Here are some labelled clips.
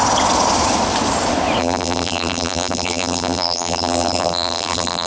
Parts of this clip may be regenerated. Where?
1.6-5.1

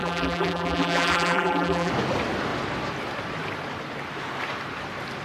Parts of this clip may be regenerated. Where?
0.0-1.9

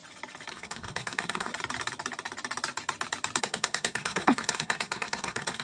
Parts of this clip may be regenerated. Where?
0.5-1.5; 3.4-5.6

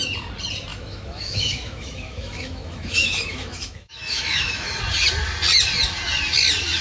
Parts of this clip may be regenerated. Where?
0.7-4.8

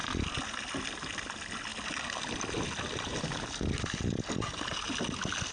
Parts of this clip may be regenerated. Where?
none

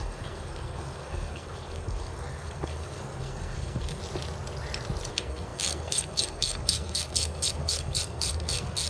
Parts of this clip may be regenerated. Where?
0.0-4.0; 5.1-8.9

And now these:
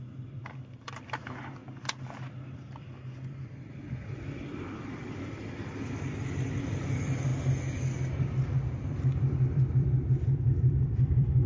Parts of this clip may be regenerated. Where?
0.0-1.6; 2.3-7.3; 8.9-11.5